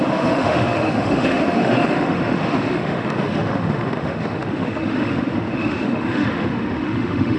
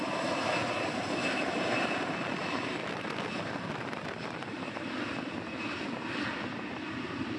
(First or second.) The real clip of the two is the second